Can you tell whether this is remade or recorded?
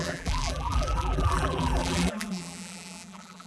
remade